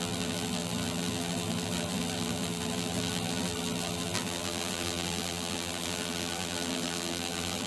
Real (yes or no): no